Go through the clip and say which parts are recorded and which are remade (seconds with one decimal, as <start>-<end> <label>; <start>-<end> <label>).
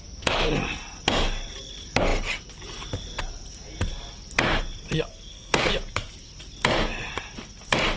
0.0-5.1 recorded; 5.1-5.7 remade; 5.7-8.0 recorded